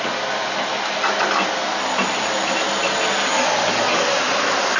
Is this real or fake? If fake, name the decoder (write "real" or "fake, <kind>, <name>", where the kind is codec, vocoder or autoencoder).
real